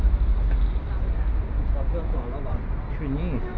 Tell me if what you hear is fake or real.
real